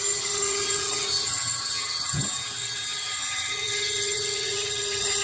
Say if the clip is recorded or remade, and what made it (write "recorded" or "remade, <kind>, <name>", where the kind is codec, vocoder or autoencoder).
remade, vocoder, HiFi-GAN